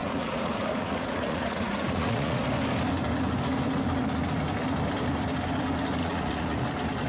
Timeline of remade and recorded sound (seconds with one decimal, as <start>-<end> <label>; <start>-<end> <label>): 0.0-2.4 remade; 2.4-6.0 recorded; 6.0-6.6 remade; 6.6-7.1 recorded